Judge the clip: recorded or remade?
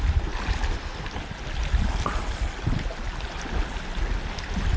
recorded